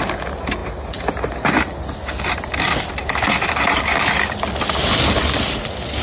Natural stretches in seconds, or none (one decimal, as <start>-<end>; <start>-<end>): 0.0-6.0